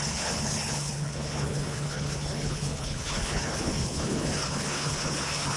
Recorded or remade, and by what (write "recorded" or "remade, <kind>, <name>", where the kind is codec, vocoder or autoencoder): remade, codec, HILCodec